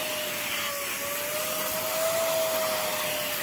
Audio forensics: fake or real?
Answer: real